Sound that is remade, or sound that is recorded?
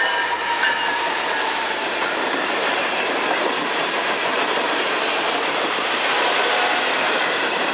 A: remade